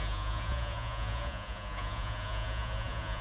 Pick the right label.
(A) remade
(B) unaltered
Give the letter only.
A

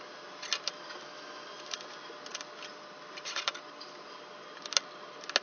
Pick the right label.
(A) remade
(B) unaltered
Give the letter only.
B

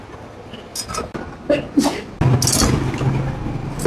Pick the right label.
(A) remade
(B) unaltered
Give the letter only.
B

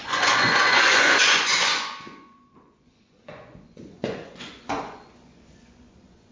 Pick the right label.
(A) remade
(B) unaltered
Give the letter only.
A